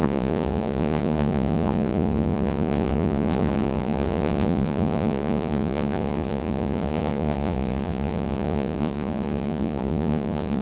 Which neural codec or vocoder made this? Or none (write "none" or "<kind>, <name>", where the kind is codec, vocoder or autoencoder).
vocoder, Vocos